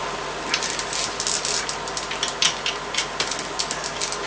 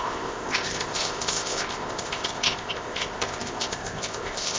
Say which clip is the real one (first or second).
first